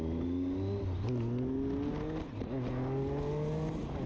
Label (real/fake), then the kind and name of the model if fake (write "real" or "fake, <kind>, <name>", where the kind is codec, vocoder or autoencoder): real